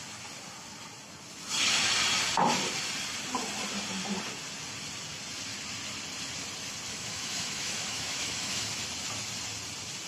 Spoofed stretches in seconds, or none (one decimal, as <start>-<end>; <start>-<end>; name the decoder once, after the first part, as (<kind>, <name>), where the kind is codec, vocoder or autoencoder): 6.9-8.7 (autoencoder, DAC-VAE)